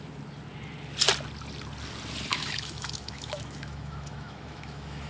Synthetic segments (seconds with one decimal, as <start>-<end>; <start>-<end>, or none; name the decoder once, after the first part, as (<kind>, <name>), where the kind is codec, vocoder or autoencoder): 2.3-5.1 (autoencoder, DAC-VAE)